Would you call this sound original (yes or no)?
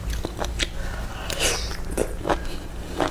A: yes